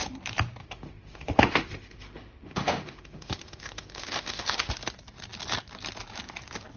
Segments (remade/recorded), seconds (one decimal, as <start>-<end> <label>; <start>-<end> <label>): 0.0-0.6 recorded; 0.6-4.7 remade; 4.7-6.8 recorded